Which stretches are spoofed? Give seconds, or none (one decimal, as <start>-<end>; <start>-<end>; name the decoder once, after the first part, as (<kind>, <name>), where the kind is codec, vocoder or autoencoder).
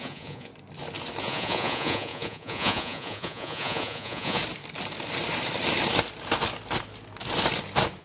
0.0-0.5 (vocoder, Vocos); 1.2-4.4